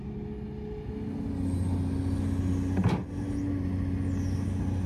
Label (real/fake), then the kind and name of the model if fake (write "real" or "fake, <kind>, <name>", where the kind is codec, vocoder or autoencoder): real